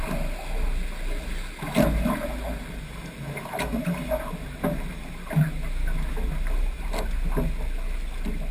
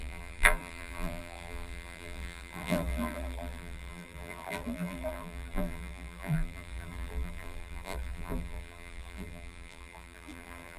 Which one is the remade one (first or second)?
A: second